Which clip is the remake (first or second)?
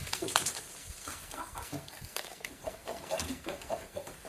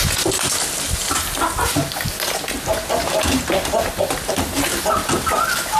first